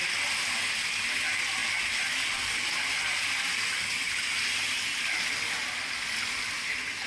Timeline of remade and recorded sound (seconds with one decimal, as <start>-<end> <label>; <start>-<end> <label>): 0.0-7.1 recorded